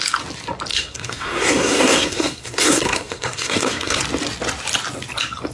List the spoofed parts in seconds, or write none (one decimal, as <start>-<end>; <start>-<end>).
0.7-4.0